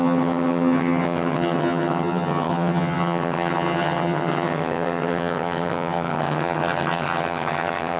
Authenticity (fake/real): fake